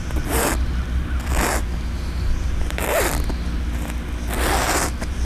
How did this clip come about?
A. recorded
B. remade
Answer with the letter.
A